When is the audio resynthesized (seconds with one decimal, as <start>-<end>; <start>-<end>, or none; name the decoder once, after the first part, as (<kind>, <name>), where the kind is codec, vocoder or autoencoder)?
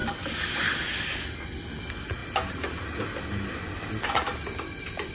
none